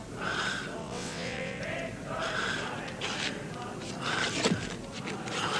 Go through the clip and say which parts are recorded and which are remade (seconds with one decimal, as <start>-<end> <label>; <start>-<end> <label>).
0.0-0.8 recorded; 0.8-1.6 remade; 1.6-5.6 recorded